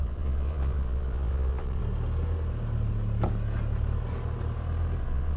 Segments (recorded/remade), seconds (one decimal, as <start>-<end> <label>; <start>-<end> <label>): 0.0-1.8 remade; 1.8-5.0 recorded; 5.0-5.4 remade